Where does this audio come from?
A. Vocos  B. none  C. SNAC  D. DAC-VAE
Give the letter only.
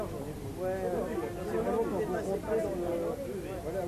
B